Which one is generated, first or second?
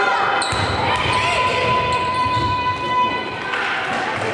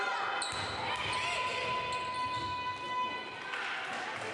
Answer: first